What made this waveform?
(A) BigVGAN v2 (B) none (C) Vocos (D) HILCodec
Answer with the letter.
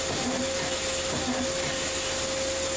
B